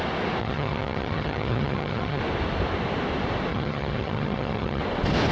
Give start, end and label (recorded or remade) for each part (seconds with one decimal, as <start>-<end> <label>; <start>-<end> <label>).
0.0-0.4 recorded; 0.4-2.2 remade; 2.2-3.5 recorded; 3.5-4.8 remade; 4.8-5.3 recorded